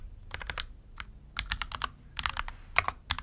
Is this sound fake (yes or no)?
no